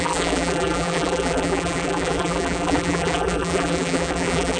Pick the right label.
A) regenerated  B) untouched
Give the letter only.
A